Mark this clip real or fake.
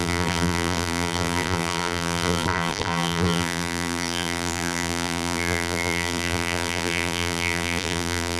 fake